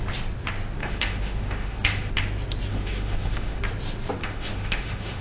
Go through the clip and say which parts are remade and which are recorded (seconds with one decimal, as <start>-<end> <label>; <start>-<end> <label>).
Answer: 0.0-0.8 recorded; 0.8-2.1 remade; 2.1-2.7 recorded; 2.7-3.6 remade; 3.6-4.2 recorded; 4.2-5.2 remade